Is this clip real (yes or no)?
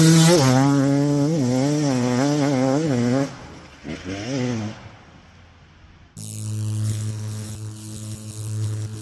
yes